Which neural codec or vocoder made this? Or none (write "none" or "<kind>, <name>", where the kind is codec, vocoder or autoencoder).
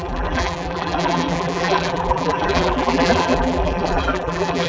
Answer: vocoder, BigVGAN v2